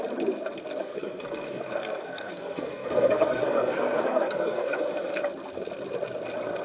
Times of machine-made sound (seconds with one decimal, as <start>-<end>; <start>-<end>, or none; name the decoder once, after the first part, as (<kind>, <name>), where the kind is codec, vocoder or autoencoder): 0.8-4.8 (codec, SNAC)